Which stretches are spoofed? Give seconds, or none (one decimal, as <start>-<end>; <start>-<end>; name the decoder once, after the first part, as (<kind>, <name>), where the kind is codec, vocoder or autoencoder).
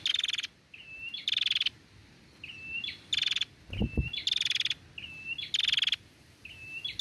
none